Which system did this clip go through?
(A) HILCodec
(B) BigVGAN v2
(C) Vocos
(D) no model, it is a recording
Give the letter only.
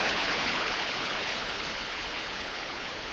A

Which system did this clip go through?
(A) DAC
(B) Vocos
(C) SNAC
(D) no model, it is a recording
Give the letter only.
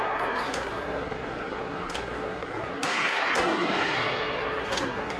C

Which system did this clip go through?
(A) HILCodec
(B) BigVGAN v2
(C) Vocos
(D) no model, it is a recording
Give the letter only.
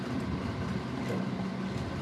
D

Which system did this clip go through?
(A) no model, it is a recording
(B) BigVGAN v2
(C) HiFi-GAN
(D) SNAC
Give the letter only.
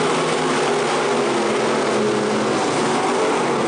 A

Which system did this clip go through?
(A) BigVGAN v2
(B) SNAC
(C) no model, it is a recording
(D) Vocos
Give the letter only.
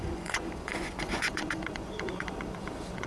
D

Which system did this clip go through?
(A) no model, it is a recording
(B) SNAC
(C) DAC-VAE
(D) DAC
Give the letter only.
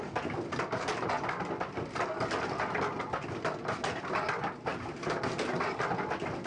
A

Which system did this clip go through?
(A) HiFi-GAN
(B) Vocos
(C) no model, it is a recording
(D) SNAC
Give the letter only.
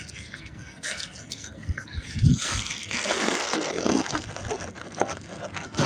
D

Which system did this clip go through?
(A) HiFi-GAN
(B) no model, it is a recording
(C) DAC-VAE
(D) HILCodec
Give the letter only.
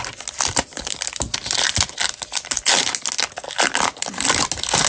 B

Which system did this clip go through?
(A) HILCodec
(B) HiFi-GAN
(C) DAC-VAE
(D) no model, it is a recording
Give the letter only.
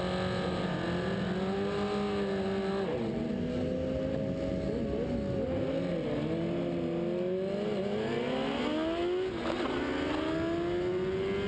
D